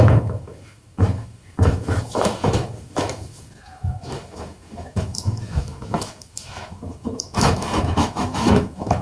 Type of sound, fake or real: fake